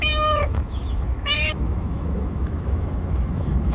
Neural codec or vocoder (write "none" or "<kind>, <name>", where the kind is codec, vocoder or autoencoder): autoencoder, DAC-VAE